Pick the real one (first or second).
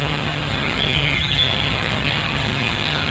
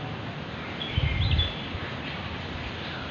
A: second